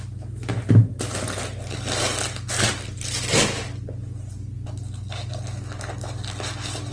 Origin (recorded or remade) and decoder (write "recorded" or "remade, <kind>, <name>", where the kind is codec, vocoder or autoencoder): recorded